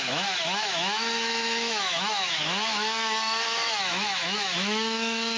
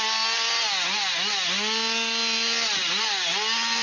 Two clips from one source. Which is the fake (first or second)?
first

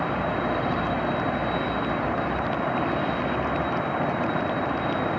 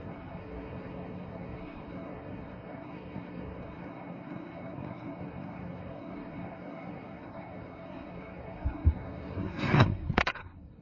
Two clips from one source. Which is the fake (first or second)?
second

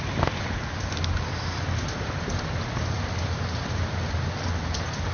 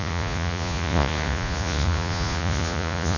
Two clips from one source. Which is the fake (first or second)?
second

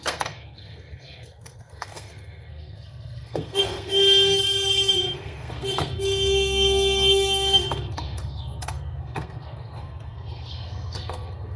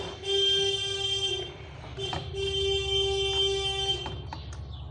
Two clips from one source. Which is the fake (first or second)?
first